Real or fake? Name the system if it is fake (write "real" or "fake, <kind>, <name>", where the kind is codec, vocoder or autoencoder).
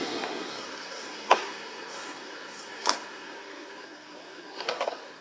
fake, codec, SNAC